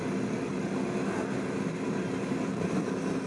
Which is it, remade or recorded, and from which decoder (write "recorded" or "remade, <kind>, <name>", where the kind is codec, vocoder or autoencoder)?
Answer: recorded